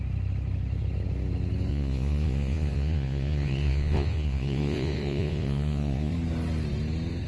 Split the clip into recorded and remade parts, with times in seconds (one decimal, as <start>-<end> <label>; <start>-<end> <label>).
0.0-1.7 recorded; 1.7-6.1 remade; 6.1-7.3 recorded